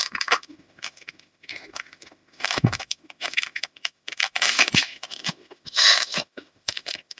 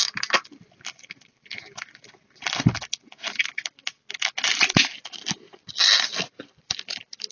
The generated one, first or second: first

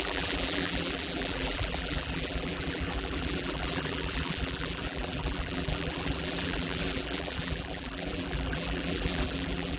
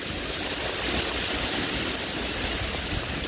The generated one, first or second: first